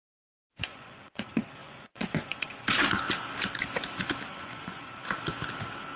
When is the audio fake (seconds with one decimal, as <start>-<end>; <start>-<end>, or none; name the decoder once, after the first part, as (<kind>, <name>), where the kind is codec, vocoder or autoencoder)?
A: 0.7-1.2 (vocoder, Vocos); 1.6-2.6; 4.3-4.9